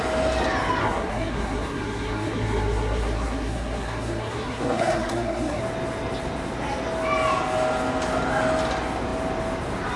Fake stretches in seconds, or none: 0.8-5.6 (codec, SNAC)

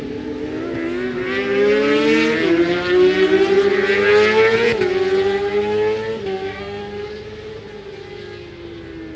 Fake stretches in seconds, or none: 6.2-6.8 (codec, SNAC)

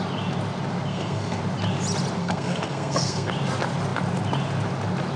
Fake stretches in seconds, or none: 0.9-1.4 (codec, SNAC); 2.2-3.3

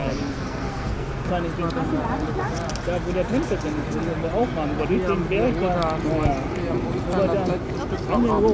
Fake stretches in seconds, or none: 0.0-1.3 (codec, SNAC)

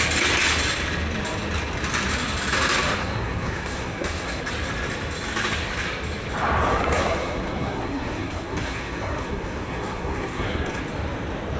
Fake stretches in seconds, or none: 3.0-4.4 (codec, SNAC); 6.7-10.8

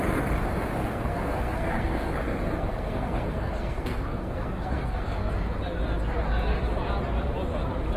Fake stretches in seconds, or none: 0.8-5.3 (codec, SNAC)

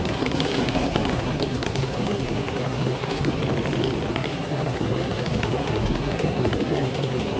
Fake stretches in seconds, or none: 0.0-3.4 (codec, SNAC); 4.1-7.4